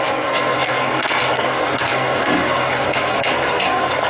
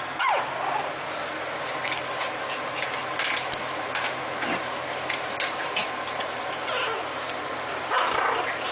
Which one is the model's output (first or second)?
first